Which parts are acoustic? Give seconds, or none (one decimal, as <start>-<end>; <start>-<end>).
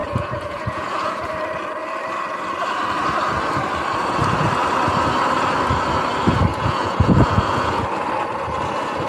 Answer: 1.3-6.5; 7.8-9.1